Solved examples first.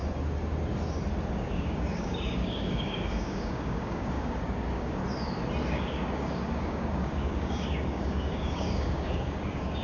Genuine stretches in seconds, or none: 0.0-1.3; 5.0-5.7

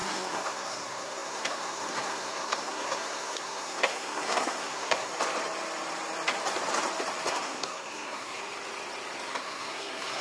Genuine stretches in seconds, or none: 5.1-7.3; 8.4-9.3

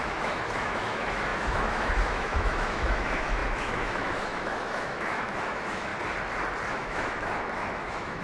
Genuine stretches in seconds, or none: 5.9-6.7

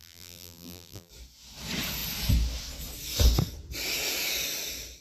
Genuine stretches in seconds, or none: 1.1-5.0

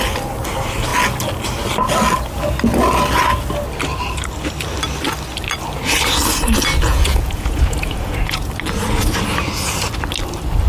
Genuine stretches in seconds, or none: 0.0-6.9; 8.5-10.7

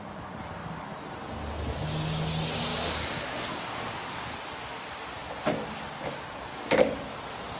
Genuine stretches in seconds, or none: 0.0-2.7; 3.6-7.6

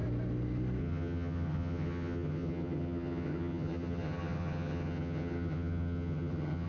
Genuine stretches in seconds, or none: 0.0-0.8